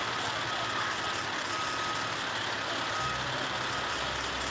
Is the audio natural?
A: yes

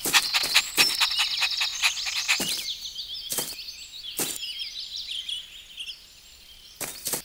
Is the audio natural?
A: yes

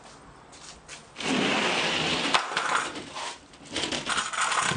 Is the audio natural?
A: yes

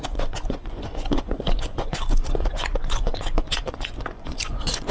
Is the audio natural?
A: no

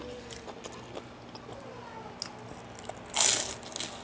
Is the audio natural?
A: yes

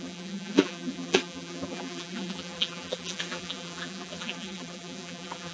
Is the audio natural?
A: no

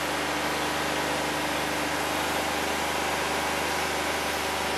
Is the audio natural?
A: yes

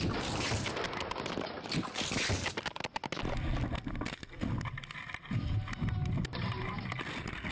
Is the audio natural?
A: yes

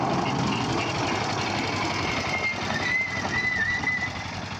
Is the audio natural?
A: yes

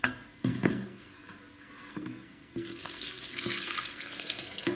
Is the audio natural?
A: no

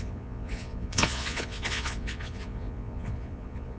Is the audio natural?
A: no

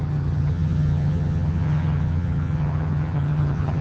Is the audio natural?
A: no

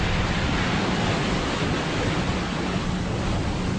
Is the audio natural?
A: yes